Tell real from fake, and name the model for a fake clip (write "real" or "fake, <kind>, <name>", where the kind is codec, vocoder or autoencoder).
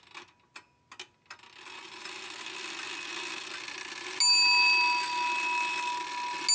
real